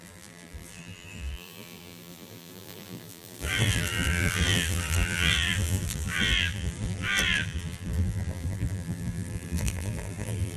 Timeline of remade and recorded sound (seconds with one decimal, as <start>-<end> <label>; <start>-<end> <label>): 0.0-10.6 remade